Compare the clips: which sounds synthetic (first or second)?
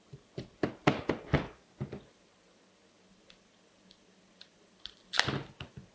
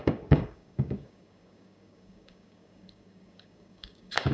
second